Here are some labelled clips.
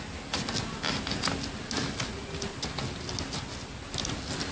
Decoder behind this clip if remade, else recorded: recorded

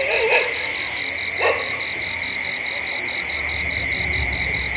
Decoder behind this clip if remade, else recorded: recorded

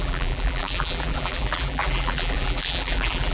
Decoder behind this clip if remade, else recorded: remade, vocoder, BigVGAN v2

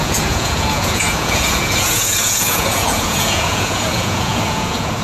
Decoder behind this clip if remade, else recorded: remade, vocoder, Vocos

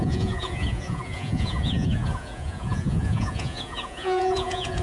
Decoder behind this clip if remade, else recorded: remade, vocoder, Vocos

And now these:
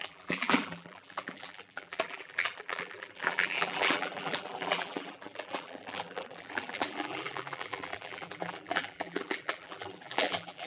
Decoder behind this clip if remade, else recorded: remade, vocoder, BigVGAN v2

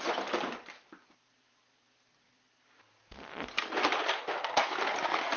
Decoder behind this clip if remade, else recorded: recorded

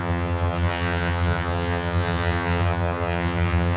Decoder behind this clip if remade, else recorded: remade, vocoder, HiFi-GAN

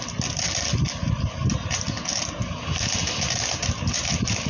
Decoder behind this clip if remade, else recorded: recorded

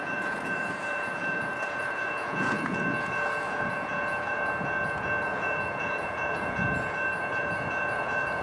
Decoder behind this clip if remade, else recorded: remade, vocoder, Vocos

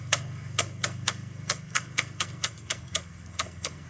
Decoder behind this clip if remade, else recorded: remade, codec, SNAC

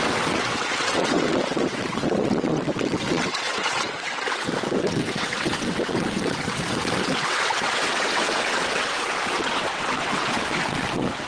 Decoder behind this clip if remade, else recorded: remade, vocoder, WaveNeXt